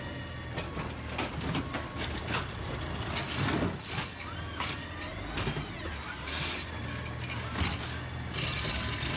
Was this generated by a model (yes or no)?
no